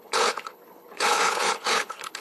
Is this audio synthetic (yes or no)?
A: yes